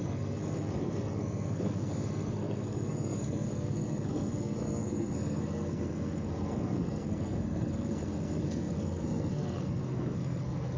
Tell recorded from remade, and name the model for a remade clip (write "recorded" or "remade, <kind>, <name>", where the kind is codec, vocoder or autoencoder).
remade, codec, SNAC